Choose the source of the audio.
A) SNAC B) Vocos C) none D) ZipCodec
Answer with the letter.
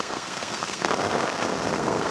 A